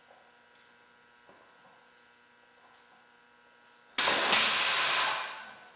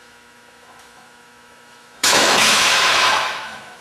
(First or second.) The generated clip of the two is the second